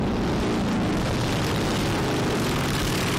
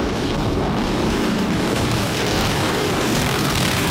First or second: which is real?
first